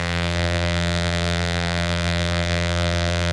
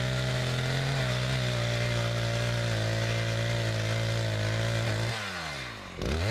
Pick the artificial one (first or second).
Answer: first